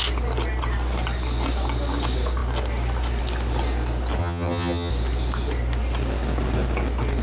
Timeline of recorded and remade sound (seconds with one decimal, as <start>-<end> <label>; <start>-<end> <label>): 0.0-4.2 recorded; 4.2-4.9 remade; 4.9-7.2 recorded